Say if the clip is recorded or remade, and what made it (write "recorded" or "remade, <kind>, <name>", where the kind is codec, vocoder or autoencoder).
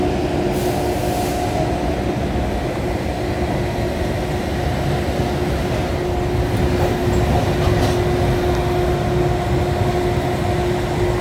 recorded